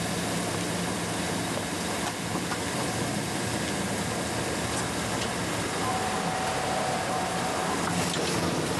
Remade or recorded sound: recorded